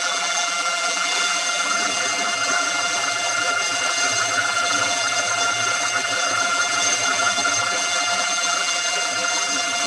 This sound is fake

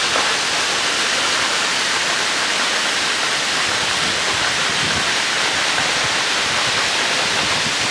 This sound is real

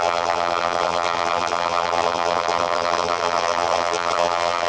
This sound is fake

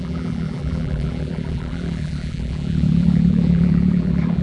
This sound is fake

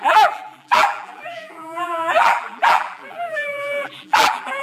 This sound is fake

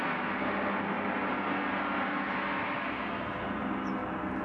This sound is real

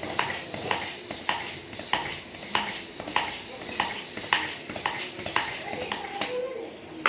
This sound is fake